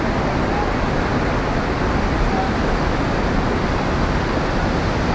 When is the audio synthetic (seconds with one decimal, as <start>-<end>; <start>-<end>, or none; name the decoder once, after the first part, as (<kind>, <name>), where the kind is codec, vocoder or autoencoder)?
none